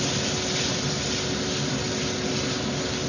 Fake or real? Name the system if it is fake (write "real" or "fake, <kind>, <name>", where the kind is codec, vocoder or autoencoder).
real